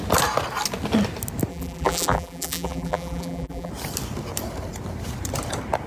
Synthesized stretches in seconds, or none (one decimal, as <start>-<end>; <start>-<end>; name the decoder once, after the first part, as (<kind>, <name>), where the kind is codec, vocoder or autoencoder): 1.5-3.7 (vocoder, BigVGAN v2)